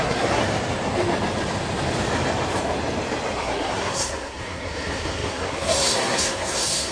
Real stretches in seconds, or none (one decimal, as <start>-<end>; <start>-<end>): 0.4-3.4